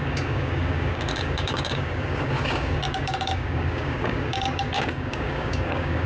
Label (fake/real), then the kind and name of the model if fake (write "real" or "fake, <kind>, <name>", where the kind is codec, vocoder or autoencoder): fake, codec, DAC